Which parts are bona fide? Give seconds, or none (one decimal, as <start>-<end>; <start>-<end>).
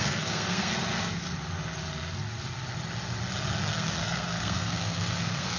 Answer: 0.7-3.6